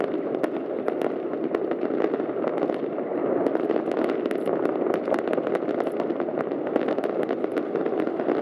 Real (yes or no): yes